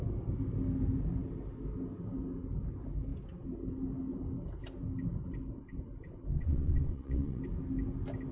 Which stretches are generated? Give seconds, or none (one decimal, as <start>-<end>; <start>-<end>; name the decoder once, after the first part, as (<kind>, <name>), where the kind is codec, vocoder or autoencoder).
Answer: 6.3-7.4 (vocoder, WaveNeXt)